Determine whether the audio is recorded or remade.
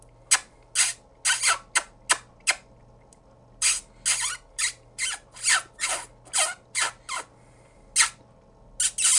recorded